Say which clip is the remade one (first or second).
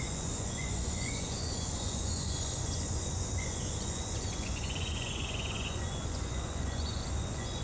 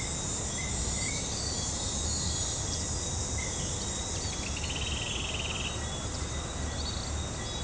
first